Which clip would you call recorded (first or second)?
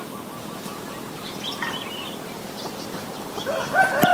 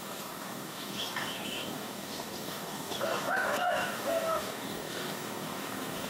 first